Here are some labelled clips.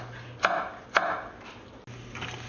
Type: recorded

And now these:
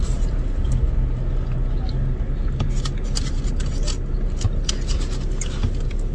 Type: recorded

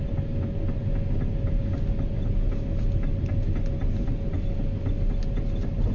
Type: recorded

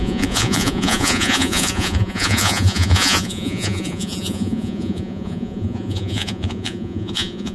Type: remade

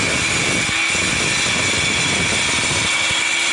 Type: recorded